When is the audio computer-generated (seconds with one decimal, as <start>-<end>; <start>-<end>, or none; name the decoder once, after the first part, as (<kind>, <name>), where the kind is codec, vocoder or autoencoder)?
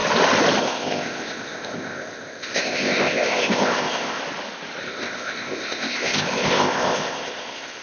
0.6-4.2 (codec, ZipCodec); 4.8-7.8